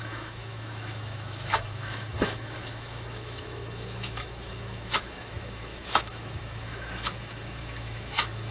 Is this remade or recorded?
remade